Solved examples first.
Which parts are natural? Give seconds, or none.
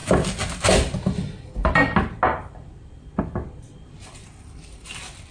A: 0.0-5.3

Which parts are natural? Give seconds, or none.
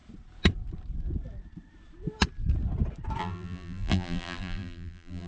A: 0.0-3.2